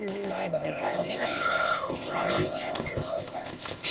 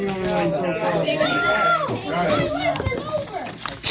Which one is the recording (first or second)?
second